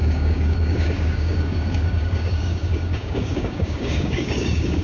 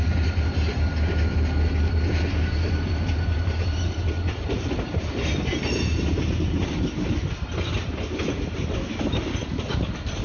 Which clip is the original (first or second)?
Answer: second